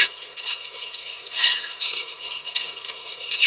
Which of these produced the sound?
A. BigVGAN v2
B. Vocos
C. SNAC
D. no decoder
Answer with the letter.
C